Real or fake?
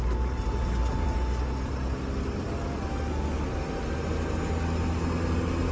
real